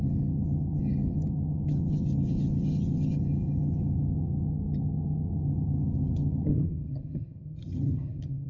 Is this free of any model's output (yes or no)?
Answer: no